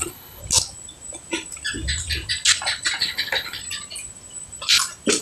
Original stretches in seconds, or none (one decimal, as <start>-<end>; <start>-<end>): 0.4-3.0; 3.6-5.2